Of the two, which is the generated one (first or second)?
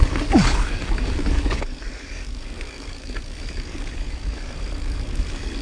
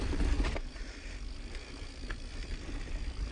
first